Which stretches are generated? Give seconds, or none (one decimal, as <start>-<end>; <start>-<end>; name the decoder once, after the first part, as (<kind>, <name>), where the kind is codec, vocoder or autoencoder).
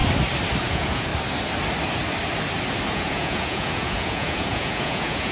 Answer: 0.7-1.1 (vocoder, Vocos); 2.9-5.3